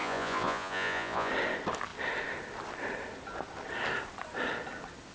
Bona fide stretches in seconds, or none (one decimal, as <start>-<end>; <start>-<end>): 1.3-5.1